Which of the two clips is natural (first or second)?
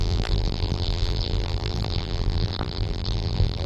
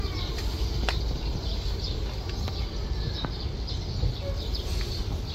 second